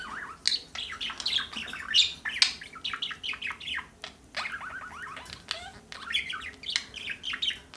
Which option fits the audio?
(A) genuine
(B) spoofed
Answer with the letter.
A